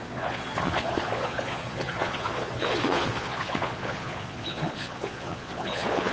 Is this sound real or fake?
fake